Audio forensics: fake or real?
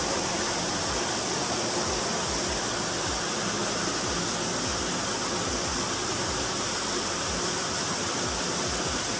real